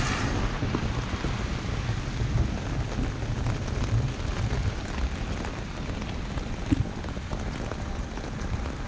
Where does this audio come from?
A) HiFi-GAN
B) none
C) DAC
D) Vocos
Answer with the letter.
B